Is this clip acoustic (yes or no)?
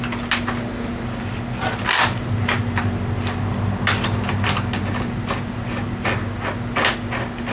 yes